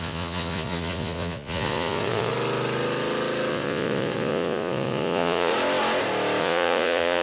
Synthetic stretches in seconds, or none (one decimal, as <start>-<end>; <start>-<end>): 0.0-2.3; 3.5-5.5; 6.4-7.2